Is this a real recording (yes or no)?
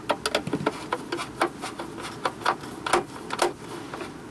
yes